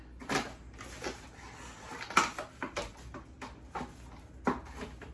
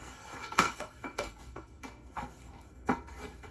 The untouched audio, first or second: first